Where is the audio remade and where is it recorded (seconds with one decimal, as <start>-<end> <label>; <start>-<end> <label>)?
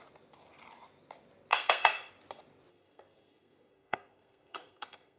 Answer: 0.0-1.5 recorded; 1.5-2.1 remade; 2.1-2.7 recorded; 2.7-5.2 remade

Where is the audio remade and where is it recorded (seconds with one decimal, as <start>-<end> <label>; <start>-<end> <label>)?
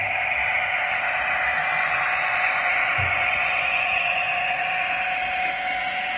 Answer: 0.0-1.6 recorded; 1.6-4.8 remade; 4.8-6.2 recorded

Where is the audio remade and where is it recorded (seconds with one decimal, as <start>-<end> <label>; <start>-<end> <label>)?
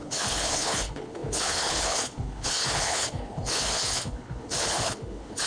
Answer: 0.0-5.5 remade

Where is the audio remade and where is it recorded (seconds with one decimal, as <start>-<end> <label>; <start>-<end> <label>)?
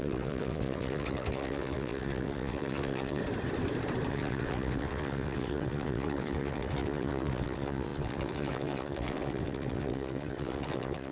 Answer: 0.0-3.2 remade; 3.2-4.1 recorded; 4.1-11.1 remade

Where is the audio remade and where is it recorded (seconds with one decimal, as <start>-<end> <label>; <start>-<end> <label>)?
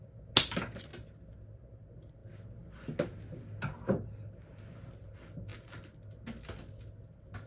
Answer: 0.0-7.5 recorded